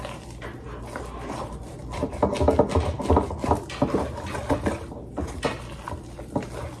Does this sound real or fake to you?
real